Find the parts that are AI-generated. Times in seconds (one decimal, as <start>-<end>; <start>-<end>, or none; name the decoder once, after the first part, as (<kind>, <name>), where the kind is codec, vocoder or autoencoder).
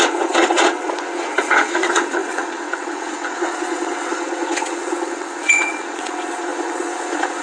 0.0-7.4 (vocoder, WaveNeXt)